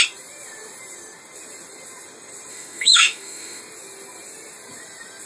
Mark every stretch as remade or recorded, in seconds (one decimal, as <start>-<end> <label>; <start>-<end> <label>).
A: 0.0-2.5 recorded; 2.5-3.6 remade; 3.6-5.3 recorded